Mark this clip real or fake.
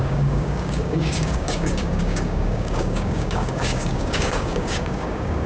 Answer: fake